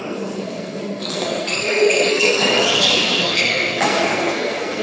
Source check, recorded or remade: remade